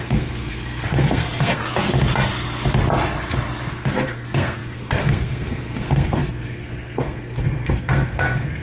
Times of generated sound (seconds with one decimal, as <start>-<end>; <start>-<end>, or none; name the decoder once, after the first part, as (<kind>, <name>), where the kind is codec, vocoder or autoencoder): 0.0-1.6 (codec, SNAC); 3.7-8.6